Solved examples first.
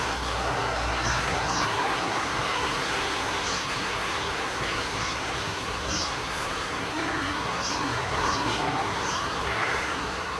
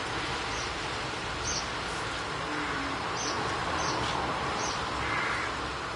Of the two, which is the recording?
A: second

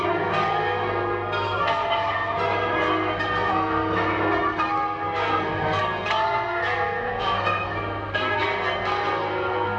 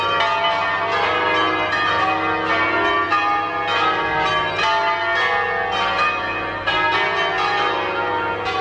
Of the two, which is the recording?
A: second